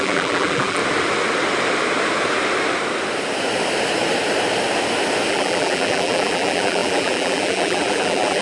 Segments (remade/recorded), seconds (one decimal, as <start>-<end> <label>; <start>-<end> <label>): 0.0-0.8 remade; 0.8-5.3 recorded; 5.3-8.4 remade